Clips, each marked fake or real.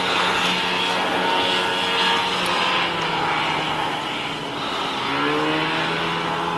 real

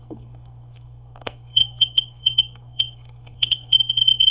fake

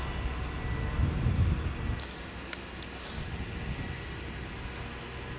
real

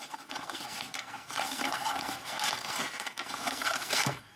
fake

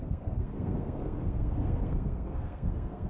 fake